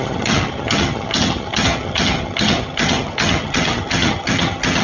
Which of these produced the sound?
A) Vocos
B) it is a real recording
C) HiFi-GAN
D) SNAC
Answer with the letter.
C